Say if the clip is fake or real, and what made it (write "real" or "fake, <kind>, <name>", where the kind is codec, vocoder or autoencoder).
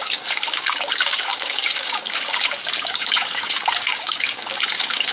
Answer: fake, codec, DAC